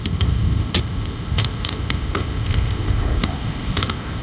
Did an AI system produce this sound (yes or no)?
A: yes